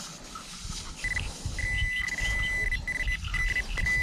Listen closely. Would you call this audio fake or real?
real